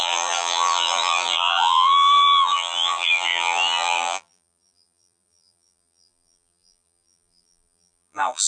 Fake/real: fake